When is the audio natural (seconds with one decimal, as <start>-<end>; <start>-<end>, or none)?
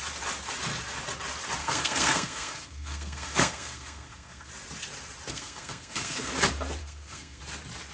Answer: 0.0-1.6; 4.5-5.3; 6.3-6.8; 7.4-7.9